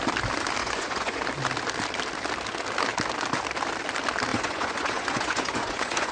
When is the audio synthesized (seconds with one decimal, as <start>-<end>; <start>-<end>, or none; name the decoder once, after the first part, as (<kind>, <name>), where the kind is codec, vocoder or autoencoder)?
0.6-1.2 (vocoder, Vocos); 4.3-6.1